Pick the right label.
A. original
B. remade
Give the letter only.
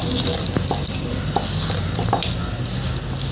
A